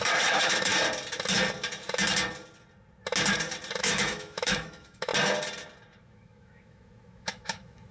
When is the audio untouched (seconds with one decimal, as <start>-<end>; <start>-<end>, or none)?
0.7-3.8; 5.1-6.0